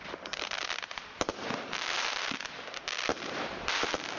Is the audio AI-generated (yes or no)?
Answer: no